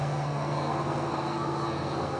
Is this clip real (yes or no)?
no